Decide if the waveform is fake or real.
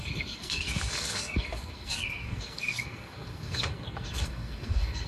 fake